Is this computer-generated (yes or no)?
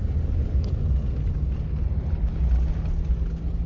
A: no